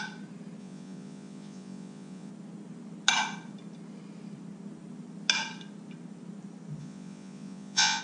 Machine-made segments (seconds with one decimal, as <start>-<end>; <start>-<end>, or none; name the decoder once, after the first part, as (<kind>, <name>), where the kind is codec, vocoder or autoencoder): 0.6-2.3 (vocoder, Vocos); 6.8-8.0